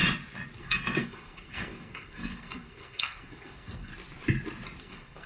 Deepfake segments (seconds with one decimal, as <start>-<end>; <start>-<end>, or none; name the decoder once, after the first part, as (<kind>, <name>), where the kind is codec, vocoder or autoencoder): 0.6-3.9 (codec, SNAC); 4.8-5.3